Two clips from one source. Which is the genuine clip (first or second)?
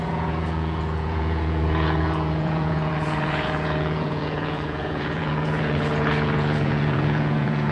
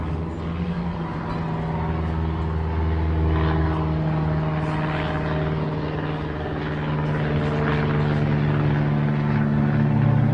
second